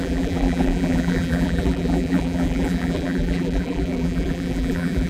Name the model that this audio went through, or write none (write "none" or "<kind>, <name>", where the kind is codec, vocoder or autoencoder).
vocoder, BigVGAN v2